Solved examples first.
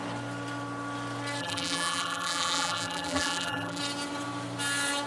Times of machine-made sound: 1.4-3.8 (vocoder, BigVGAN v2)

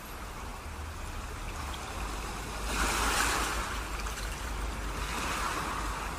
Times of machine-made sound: 0.0-0.5 (vocoder, BigVGAN v2); 4.2-4.8; 5.7-6.2